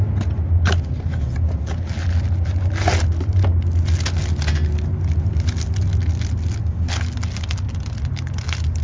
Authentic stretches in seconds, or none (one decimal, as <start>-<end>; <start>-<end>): 0.0-8.8